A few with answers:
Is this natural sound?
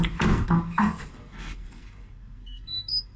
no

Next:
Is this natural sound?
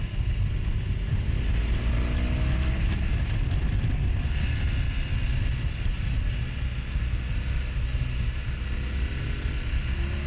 yes